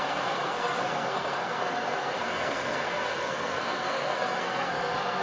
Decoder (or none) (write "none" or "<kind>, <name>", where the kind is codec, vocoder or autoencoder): codec, SNAC